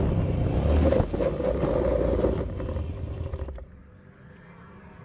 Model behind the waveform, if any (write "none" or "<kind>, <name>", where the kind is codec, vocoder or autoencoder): none